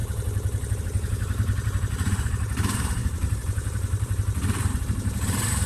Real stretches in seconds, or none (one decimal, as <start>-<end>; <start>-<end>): 0.0-0.8